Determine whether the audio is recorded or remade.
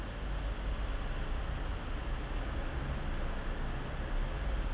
recorded